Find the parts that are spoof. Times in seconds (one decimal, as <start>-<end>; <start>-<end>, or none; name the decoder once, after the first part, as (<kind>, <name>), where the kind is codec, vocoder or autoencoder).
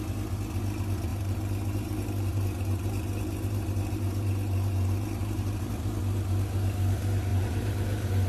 1.1-6.0 (vocoder, BigVGAN v2); 7.3-8.3